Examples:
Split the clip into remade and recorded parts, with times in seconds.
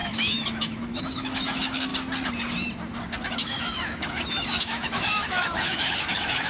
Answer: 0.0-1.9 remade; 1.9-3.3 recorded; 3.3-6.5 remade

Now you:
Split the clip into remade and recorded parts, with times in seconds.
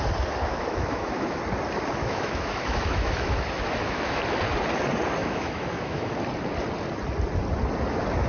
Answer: 0.0-0.5 recorded; 0.5-1.4 remade; 1.4-2.0 recorded; 2.0-4.2 remade; 4.2-5.2 recorded; 5.2-6.2 remade; 6.2-8.3 recorded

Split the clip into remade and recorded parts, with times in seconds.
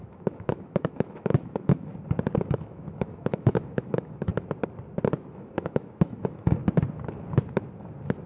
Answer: 0.0-1.9 remade; 1.9-2.5 recorded; 2.5-4.3 remade; 4.3-5.3 recorded; 5.3-6.6 remade; 6.6-8.3 recorded